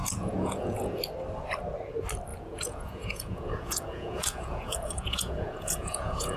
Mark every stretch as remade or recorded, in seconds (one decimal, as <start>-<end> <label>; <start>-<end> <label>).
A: 0.0-1.0 remade; 1.0-2.3 recorded; 2.3-6.4 remade

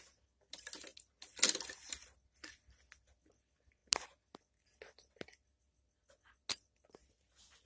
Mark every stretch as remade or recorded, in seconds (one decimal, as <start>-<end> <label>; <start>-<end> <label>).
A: 0.0-7.7 recorded